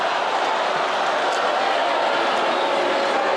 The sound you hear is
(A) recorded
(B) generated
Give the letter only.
A